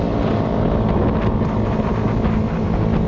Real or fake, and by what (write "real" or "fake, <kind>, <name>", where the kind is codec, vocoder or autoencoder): real